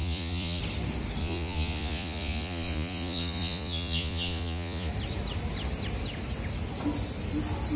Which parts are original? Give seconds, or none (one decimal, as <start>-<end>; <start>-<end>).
0.6-1.2; 4.9-7.8